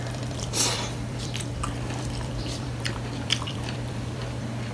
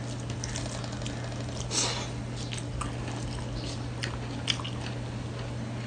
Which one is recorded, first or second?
second